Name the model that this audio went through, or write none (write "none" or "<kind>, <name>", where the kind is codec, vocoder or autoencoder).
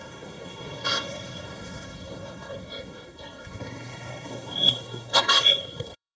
codec, SNAC